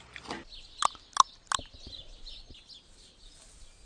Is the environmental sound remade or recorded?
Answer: recorded